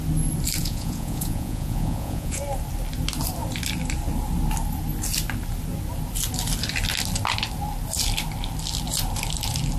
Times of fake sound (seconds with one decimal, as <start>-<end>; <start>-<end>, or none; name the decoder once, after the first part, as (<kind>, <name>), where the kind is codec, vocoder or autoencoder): 0.6-2.4 (vocoder, Vocos)